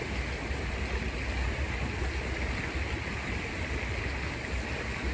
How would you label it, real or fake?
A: real